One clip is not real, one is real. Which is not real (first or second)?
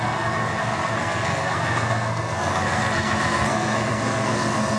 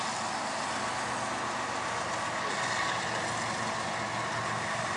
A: first